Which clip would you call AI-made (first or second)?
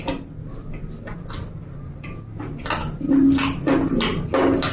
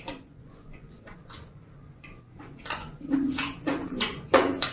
second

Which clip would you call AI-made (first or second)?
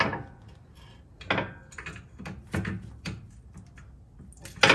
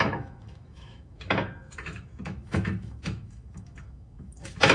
second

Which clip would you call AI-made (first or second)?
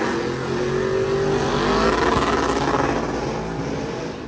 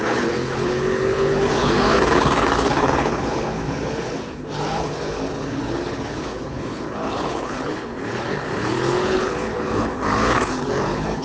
second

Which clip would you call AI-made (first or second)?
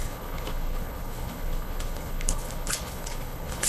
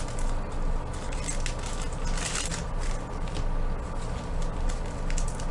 first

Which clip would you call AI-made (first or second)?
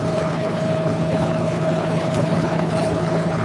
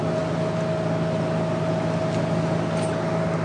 first